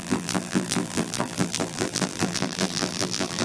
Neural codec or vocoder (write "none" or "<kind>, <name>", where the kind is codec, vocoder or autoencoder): vocoder, BigVGAN v2